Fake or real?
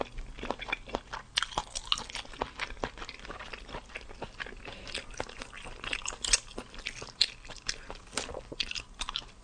real